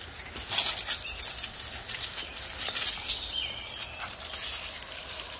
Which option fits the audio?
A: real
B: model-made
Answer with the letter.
A